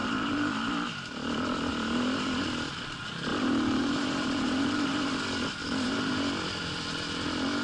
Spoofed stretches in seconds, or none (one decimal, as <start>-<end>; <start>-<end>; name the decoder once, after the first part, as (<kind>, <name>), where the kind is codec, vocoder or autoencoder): 0.0-0.7 (vocoder, BigVGAN v2); 1.7-2.4; 3.3-5.1; 5.6-6.1